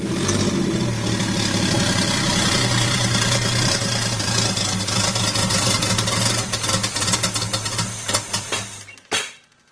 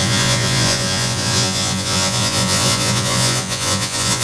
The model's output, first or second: second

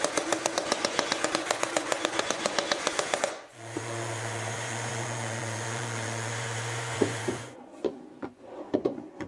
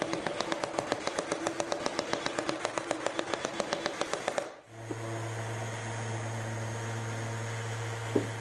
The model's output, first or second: first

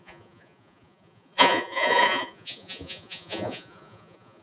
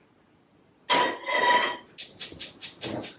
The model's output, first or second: first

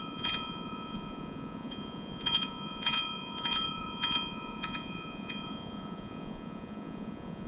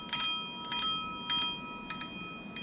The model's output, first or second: first